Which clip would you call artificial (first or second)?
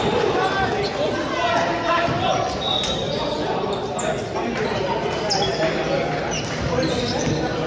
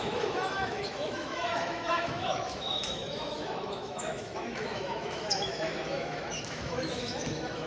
second